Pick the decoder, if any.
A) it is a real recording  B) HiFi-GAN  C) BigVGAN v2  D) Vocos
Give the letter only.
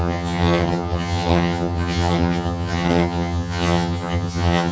B